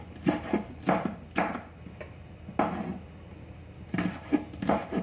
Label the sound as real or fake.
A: real